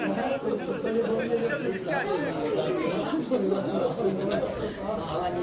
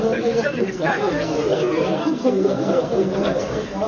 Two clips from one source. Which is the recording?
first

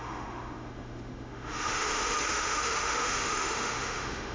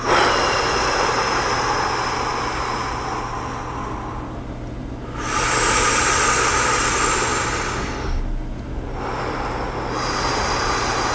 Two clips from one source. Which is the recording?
second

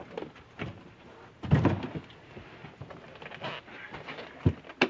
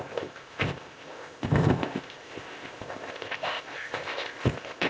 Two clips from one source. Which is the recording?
first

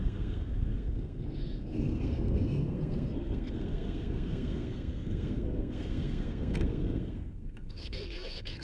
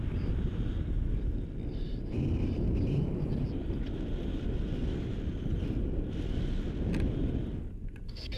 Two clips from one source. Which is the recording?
second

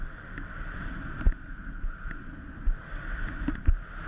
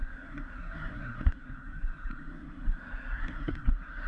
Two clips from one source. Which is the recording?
first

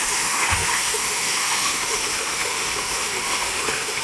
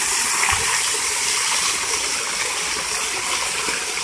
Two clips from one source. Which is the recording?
second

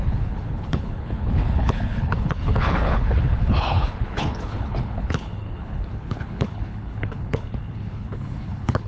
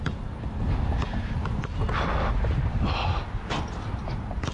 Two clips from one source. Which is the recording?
second